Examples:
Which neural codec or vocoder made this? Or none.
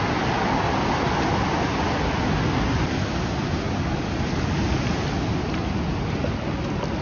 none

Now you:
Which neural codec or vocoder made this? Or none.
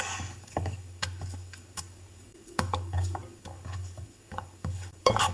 codec, DAC